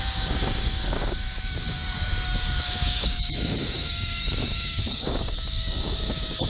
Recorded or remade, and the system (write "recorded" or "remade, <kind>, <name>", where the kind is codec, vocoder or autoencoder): remade, codec, DAC